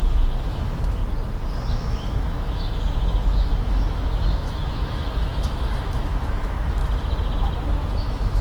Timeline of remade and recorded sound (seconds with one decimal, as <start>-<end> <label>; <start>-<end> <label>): 0.0-1.0 remade; 1.0-1.7 recorded; 1.7-6.8 remade; 6.8-7.7 recorded; 7.7-8.4 remade